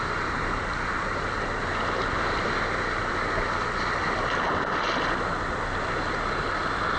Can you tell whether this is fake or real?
real